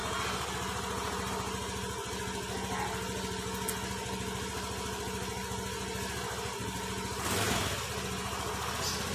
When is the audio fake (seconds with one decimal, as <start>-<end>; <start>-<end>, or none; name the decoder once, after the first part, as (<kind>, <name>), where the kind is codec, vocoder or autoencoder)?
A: none